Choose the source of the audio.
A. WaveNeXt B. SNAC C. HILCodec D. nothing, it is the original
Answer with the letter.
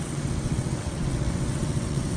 A